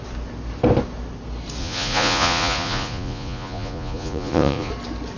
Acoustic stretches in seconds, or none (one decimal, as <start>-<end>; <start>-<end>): 0.0-1.6; 4.7-5.2